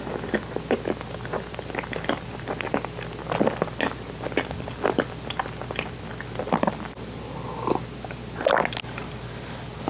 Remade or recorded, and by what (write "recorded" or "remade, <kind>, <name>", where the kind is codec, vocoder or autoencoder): recorded